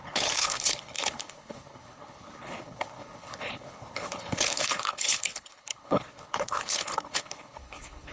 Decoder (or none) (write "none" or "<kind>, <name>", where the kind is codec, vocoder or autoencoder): codec, HILCodec